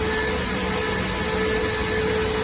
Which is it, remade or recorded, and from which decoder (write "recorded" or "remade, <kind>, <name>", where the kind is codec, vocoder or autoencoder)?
recorded